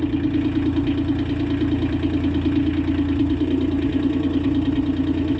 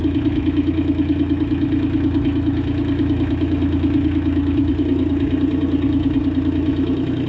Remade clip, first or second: second